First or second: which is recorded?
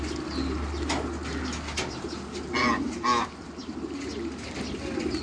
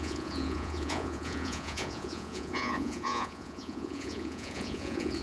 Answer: first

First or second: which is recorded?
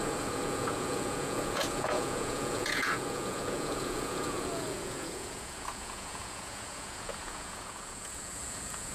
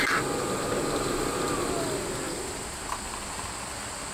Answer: second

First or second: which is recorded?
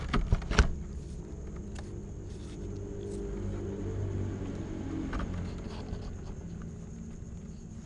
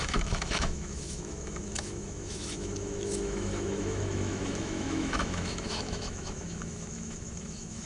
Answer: first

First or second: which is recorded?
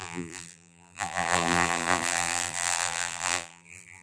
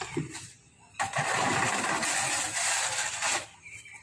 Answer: second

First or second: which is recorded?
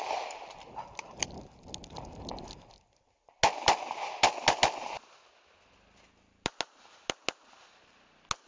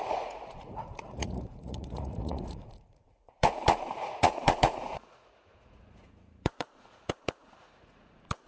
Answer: first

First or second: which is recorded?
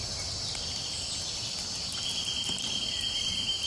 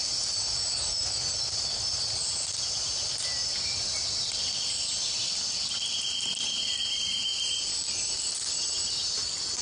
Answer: second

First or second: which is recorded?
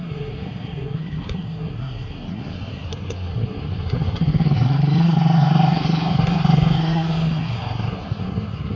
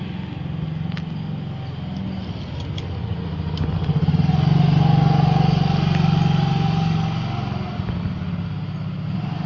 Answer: second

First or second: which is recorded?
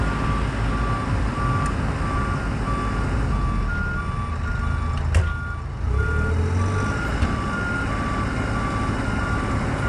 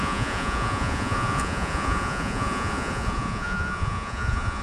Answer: first